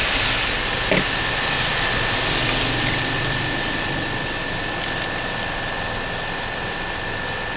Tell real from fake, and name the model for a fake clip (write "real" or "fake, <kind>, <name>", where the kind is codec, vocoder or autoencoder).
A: real